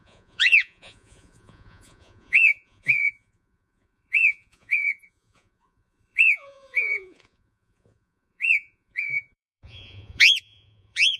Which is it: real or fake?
fake